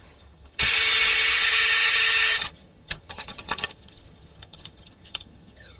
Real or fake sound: fake